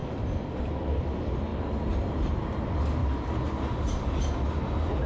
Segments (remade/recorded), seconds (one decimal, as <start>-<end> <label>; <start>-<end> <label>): 0.0-1.0 remade; 1.0-5.1 recorded